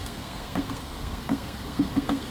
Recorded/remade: remade